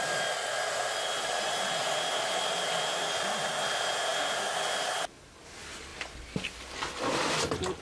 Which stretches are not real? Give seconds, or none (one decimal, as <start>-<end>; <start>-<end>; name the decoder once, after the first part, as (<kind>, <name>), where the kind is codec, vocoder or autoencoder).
1.8-3.5 (vocoder, BigVGAN v2); 4.1-5.4; 5.9-7.8